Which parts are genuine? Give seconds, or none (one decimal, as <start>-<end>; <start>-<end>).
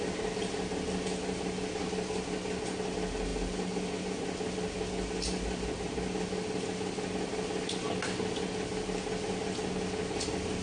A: 0.0-10.6